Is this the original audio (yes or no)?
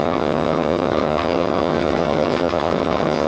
no